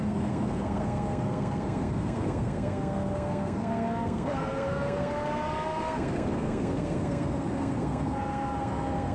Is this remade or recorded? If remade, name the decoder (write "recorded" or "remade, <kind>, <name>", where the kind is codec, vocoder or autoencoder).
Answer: remade, codec, SNAC